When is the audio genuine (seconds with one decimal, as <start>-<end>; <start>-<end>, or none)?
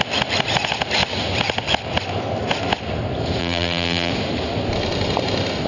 0.0-3.4; 4.1-5.7